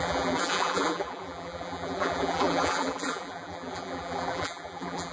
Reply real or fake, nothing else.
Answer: fake